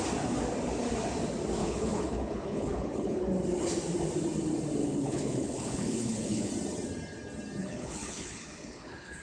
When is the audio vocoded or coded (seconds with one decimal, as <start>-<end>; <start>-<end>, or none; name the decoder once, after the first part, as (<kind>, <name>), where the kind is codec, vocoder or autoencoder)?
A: 1.6-3.2 (codec, HILCodec); 4.8-6.5; 7.6-9.2